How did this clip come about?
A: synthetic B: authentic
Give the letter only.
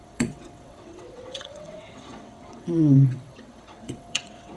A